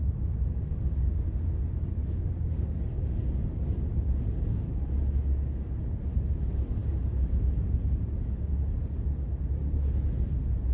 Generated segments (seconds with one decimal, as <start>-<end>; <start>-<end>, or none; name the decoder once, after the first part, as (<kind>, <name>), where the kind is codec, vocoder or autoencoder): none